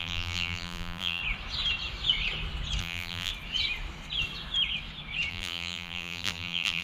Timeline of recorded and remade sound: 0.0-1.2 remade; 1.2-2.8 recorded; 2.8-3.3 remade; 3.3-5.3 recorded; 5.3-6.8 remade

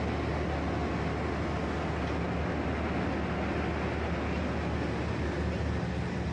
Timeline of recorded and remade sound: 0.0-6.3 recorded

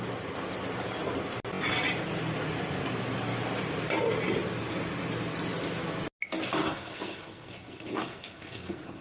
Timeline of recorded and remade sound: 0.0-6.6 recorded; 6.6-9.0 remade

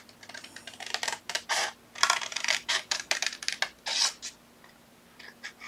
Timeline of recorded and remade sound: 0.0-2.3 recorded; 2.3-3.1 remade; 3.1-5.7 recorded

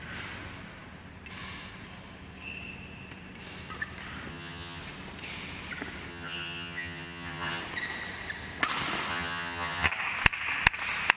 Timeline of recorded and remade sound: 0.0-4.3 recorded; 4.3-4.8 remade; 4.8-6.1 recorded; 6.1-7.6 remade; 7.6-9.1 recorded; 9.1-9.9 remade; 9.9-11.2 recorded

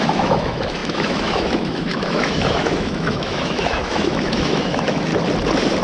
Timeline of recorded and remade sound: 0.0-5.1 remade; 5.1-5.8 recorded